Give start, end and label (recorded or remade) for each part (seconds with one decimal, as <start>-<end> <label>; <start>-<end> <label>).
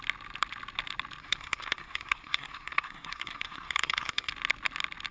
0.0-1.2 recorded; 1.2-4.3 remade; 4.3-5.1 recorded